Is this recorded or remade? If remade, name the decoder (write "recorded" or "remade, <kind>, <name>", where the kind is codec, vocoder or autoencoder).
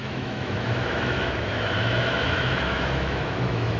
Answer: remade, autoencoder, DAC-VAE